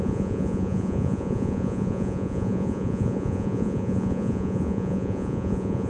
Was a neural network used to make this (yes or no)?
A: yes